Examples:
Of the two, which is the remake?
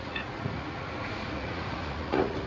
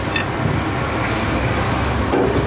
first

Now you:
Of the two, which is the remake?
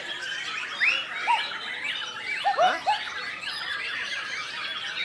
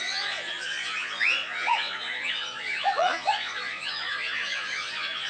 second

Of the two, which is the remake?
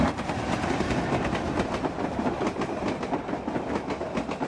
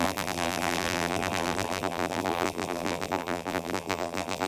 second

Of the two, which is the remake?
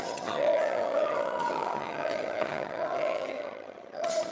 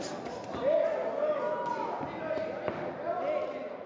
first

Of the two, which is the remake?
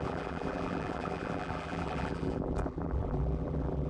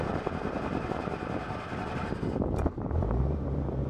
first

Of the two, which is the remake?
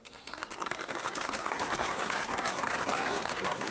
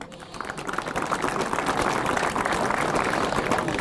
first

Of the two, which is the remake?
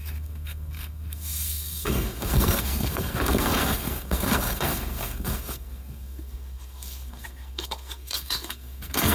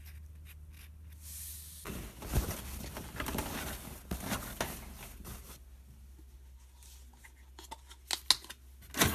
first